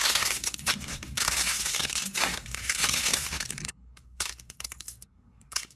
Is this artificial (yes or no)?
yes